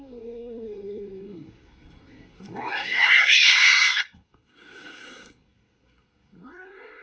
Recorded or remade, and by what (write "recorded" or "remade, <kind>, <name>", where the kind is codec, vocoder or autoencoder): remade, codec, SNAC